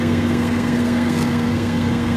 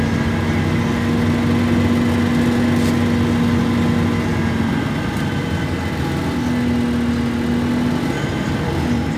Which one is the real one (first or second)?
second